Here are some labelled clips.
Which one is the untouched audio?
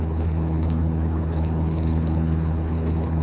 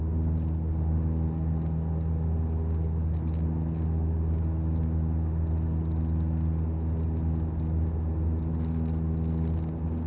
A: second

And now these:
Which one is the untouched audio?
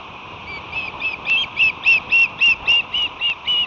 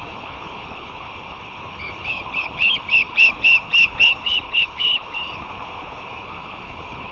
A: first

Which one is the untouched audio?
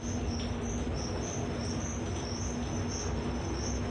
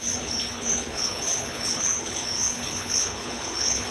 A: first